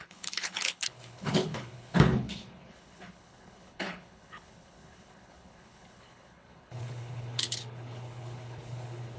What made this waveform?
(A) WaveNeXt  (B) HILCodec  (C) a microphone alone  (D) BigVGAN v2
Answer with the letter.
B